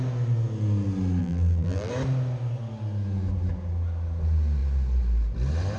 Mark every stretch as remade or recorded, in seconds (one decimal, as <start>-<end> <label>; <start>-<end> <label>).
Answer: 0.0-1.2 recorded; 1.2-1.9 remade; 1.9-5.8 recorded